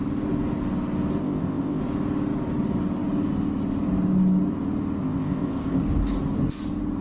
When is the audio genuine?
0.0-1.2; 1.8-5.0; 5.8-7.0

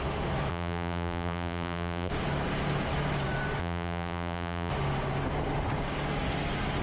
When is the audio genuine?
0.0-0.5; 2.1-3.6; 4.7-6.8

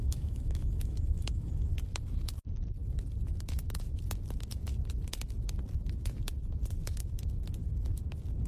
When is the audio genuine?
1.7-8.5

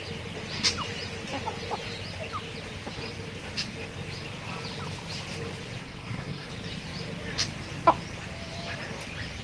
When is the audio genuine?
0.0-5.8; 6.5-9.4